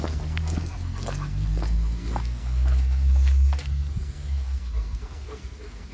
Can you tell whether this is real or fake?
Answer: fake